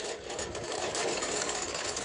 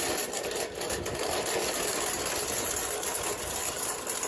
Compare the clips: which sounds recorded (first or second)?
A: second